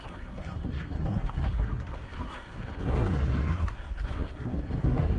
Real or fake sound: fake